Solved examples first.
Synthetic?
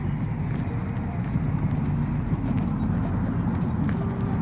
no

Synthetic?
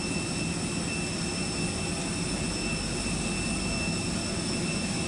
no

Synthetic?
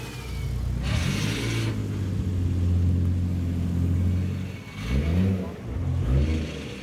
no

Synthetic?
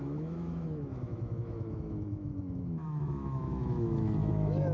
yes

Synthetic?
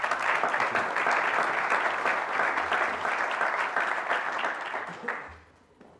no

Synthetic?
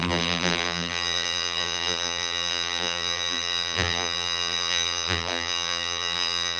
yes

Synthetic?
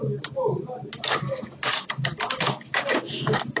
no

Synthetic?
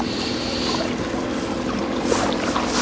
no